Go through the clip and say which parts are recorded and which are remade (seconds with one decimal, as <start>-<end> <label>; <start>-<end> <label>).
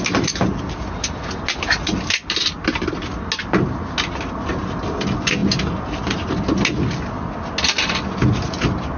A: 0.0-9.0 recorded